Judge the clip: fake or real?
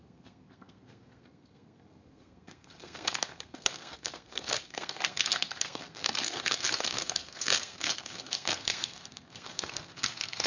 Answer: fake